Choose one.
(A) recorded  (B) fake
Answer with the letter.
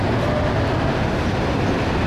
A